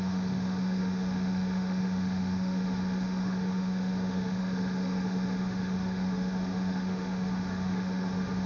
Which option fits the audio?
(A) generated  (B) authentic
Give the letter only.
A